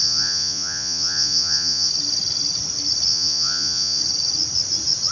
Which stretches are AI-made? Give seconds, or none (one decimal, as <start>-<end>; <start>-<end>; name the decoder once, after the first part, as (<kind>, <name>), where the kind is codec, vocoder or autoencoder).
0.0-1.9 (vocoder, Vocos); 3.1-4.0